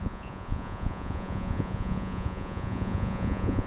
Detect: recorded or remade remade